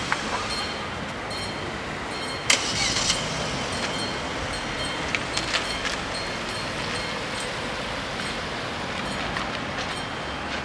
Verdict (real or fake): real